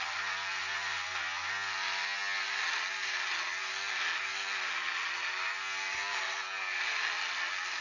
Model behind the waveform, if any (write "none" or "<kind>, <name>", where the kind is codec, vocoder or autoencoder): none